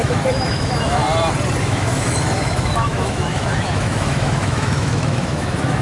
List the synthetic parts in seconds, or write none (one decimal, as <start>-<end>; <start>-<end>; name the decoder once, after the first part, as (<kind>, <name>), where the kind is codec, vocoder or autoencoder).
0.0-1.0 (autoencoder, DAC-VAE); 1.6-5.8